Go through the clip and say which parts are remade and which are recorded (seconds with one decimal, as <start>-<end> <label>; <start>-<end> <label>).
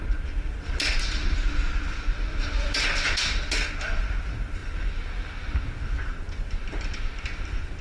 0.0-7.8 recorded